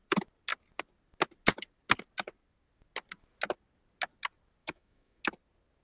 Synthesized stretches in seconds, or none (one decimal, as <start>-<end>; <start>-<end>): 4.6-5.2